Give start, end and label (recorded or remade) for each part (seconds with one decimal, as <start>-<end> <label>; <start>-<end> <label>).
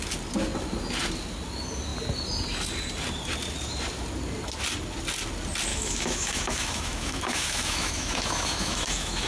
0.0-5.7 recorded; 5.7-9.3 remade